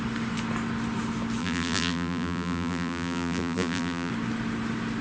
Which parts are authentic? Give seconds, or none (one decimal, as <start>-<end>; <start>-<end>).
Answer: 0.0-1.4; 4.1-5.0